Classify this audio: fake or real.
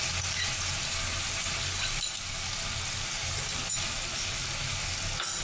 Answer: real